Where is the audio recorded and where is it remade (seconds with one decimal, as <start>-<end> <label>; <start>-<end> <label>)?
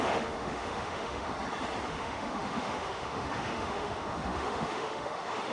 0.0-1.3 remade; 1.3-1.9 recorded; 1.9-5.5 remade